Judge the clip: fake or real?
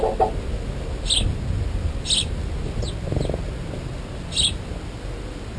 real